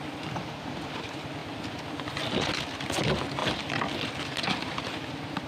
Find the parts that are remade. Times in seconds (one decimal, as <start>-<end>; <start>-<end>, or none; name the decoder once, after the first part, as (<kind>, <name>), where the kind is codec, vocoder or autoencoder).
none